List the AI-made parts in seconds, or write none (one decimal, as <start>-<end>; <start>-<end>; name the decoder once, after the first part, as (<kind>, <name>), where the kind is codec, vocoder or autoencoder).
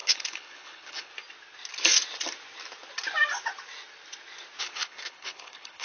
0.0-1.1 (codec, HILCodec); 4.6-5.8